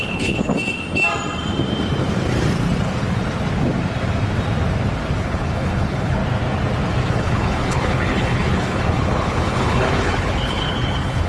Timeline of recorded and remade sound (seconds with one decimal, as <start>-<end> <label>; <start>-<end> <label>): 0.0-0.5 remade; 0.5-5.2 recorded; 5.2-6.2 remade; 6.2-7.1 recorded; 7.1-11.3 remade